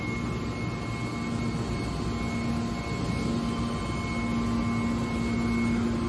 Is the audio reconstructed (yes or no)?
no